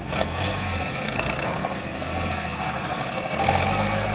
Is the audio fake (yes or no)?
yes